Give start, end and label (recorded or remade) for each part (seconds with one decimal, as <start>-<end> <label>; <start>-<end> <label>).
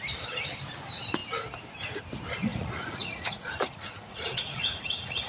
0.0-2.5 recorded; 2.5-5.3 remade